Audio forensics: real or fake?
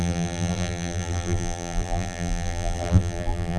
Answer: fake